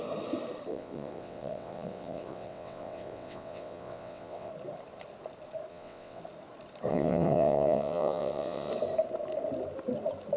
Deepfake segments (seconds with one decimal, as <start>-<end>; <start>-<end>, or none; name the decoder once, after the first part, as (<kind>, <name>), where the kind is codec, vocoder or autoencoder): 0.7-4.5 (vocoder, WaveNeXt); 5.7-6.2; 6.9-8.7